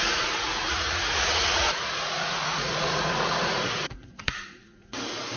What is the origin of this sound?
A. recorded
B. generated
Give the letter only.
B